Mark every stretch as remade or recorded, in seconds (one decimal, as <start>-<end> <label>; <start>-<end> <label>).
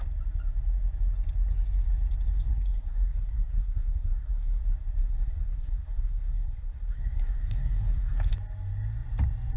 0.0-2.5 recorded; 2.5-4.6 remade; 4.6-5.0 recorded; 5.0-8.3 remade; 8.3-9.6 recorded